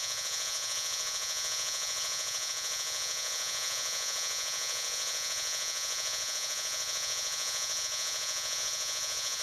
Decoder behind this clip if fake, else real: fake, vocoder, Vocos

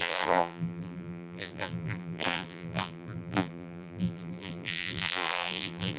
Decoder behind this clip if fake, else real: fake, vocoder, BigVGAN v2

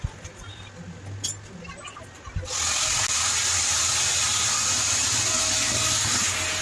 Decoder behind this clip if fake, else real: real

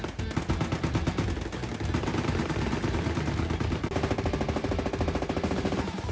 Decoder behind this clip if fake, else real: real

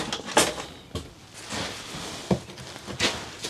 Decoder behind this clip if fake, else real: real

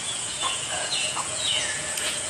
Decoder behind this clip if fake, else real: fake, vocoder, Vocos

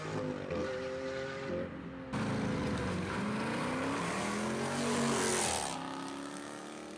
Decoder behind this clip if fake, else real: real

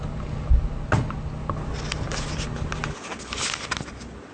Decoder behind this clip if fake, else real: real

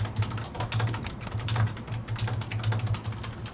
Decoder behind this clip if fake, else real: real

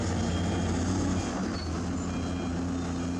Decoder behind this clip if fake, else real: real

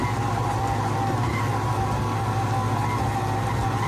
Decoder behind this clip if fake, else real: real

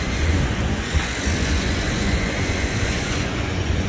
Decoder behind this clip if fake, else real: fake, vocoder, Vocos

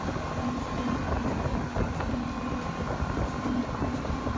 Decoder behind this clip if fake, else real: real